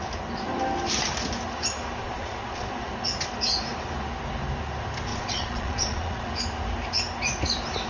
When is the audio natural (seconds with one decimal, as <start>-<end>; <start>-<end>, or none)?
0.0-2.0; 2.8-5.1; 6.3-7.9